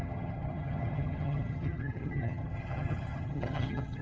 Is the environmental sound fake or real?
fake